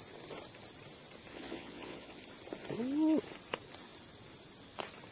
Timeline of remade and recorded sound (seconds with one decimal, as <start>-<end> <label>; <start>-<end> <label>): 0.0-1.3 recorded; 1.3-2.2 remade; 2.2-5.1 recorded

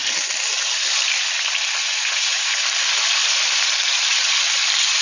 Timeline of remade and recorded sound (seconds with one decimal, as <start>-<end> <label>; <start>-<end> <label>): 0.0-1.8 recorded; 1.8-2.6 remade; 2.6-5.0 recorded

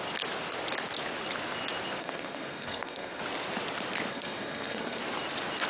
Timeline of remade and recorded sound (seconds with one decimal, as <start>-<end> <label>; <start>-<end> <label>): 0.0-2.0 recorded; 2.0-3.2 remade; 3.2-4.1 recorded; 4.1-5.0 remade; 5.0-5.7 recorded

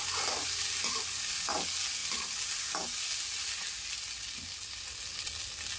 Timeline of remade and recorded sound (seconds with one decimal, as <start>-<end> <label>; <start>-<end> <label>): 0.0-5.8 recorded

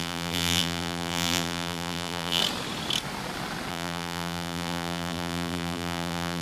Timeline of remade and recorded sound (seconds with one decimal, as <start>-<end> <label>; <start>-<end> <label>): 0.0-2.4 remade; 2.4-3.7 recorded; 3.7-6.4 remade

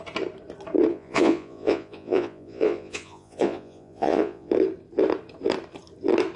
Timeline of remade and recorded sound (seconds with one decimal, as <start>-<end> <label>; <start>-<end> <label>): 0.0-0.9 recorded; 0.9-4.5 remade; 4.5-6.4 recorded